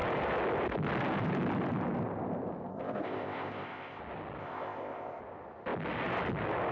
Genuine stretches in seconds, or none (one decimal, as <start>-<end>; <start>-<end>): 0.0-2.7; 4.0-4.4; 5.2-6.7